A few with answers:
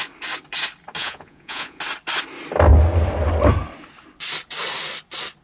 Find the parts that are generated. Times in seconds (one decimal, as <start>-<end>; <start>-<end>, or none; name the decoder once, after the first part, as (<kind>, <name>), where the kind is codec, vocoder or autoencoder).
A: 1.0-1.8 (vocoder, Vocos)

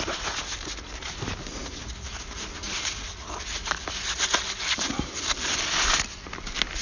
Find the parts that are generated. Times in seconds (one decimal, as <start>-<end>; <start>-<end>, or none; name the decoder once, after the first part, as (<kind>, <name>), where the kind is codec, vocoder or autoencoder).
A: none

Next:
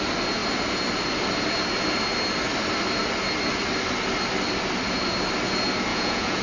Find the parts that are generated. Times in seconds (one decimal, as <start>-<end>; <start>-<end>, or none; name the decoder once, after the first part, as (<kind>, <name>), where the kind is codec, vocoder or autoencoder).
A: 5.9-6.4 (vocoder, Vocos)